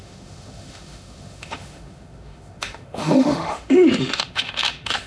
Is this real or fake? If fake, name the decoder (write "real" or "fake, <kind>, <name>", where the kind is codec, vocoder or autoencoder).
fake, autoencoder, DAC-VAE